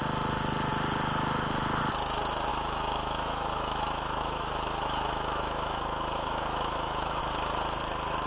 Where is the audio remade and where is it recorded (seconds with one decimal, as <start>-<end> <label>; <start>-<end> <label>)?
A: 0.0-2.5 recorded; 2.5-7.2 remade; 7.2-8.3 recorded